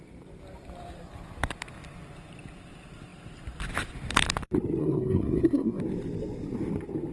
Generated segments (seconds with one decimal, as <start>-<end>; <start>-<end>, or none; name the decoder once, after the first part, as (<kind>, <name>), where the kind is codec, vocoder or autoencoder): 4.8-5.8 (codec, SNAC)